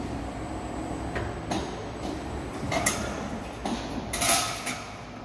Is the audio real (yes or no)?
yes